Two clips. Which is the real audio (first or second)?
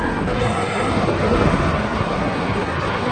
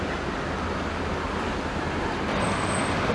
second